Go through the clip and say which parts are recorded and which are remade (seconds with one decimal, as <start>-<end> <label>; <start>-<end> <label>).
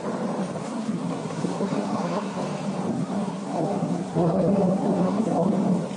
0.0-0.6 recorded; 0.6-2.4 remade; 2.4-2.9 recorded; 2.9-5.5 remade; 5.5-6.0 recorded